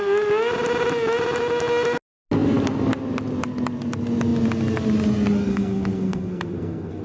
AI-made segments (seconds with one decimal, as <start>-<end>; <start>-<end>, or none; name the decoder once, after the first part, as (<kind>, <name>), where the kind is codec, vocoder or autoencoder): 5.5-7.0 (codec, SNAC)